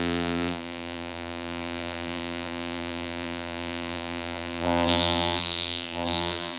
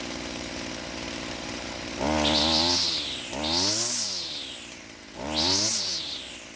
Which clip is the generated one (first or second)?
first